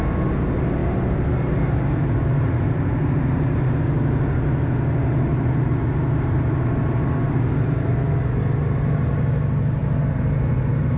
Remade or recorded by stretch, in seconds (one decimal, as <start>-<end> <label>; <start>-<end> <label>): 0.0-0.8 recorded; 0.8-3.8 remade; 3.8-5.3 recorded; 5.3-8.0 remade; 8.0-11.0 recorded